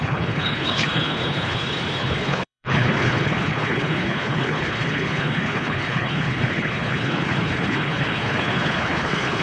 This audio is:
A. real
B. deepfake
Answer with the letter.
B